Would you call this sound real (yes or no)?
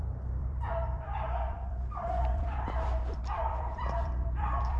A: no